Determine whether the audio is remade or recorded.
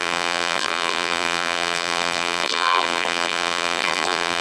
remade